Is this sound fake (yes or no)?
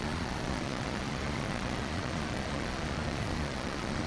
yes